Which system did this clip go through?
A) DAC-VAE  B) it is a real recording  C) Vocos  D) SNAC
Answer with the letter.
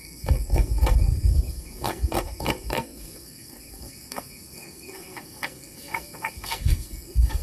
D